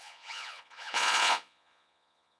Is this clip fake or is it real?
fake